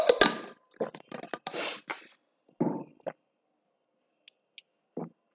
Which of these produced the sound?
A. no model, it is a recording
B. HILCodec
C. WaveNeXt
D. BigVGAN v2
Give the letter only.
A